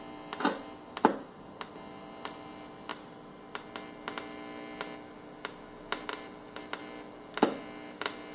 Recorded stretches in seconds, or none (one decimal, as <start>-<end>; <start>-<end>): 0.0-8.3